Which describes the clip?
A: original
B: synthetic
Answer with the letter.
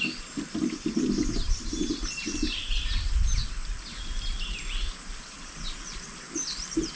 B